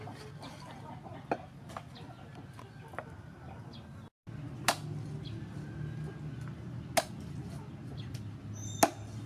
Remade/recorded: recorded